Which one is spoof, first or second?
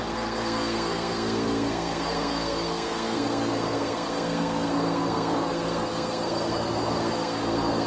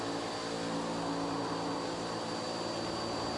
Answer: first